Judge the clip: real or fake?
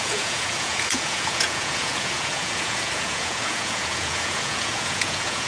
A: fake